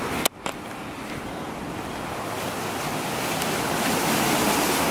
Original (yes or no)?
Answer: yes